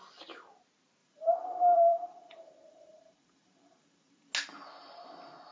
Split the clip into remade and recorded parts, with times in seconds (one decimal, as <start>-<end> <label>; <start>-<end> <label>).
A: 0.0-1.0 recorded; 1.0-4.3 remade; 4.3-5.5 recorded